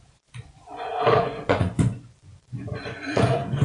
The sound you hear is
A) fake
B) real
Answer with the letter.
A